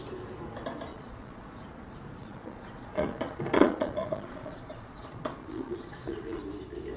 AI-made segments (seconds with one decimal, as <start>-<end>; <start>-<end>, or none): 0.9-1.6; 2.2-6.4